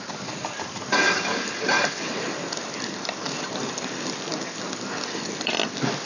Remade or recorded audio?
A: remade